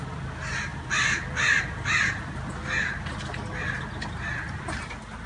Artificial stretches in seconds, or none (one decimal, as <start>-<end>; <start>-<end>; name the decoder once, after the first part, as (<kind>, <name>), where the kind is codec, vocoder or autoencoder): none